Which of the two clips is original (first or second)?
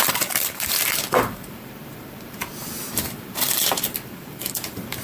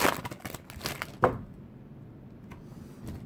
second